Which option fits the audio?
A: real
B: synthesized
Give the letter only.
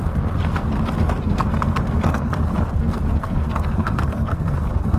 B